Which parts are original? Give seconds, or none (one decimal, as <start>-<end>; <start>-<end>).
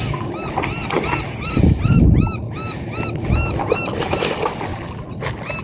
0.0-5.6